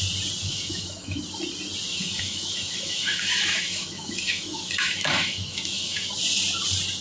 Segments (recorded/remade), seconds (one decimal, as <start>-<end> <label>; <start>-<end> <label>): 0.0-0.4 recorded; 0.4-1.2 remade; 1.2-1.9 recorded; 1.9-6.1 remade; 6.1-7.0 recorded